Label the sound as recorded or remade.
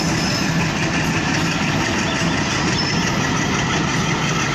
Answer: recorded